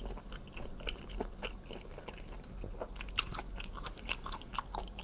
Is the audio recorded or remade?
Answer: recorded